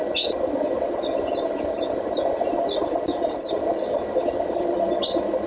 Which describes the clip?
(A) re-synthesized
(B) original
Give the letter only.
B